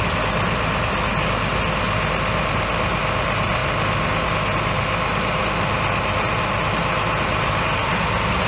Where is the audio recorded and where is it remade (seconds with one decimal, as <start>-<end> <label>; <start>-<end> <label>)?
0.0-8.5 recorded